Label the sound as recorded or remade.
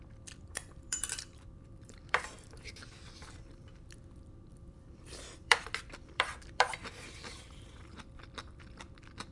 remade